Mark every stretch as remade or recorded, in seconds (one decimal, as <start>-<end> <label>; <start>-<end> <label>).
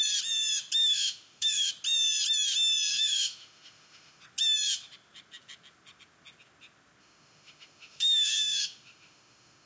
0.0-0.8 recorded; 0.8-1.7 remade; 1.7-2.9 recorded; 2.9-4.2 remade; 4.2-7.0 recorded; 7.0-9.7 remade